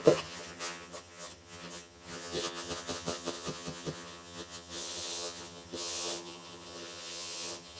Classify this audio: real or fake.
fake